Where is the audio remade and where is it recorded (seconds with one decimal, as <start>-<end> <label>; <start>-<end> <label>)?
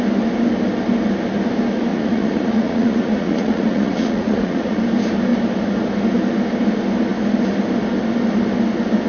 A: 0.0-1.9 recorded; 1.9-4.8 remade; 4.8-9.1 recorded